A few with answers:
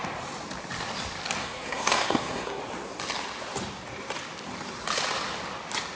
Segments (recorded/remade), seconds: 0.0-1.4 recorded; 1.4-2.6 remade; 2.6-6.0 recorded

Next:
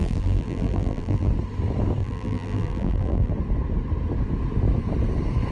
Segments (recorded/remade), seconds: 0.0-1.3 remade; 1.3-2.0 recorded; 2.0-3.3 remade; 3.3-5.5 recorded

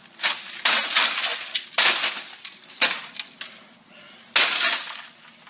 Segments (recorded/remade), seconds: 0.0-5.5 recorded

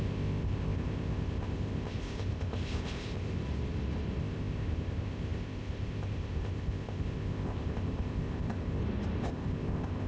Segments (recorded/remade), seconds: 0.0-3.4 remade; 3.4-4.2 recorded; 4.2-8.8 remade; 8.8-9.3 recorded; 9.3-10.1 remade